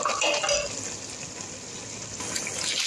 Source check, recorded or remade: recorded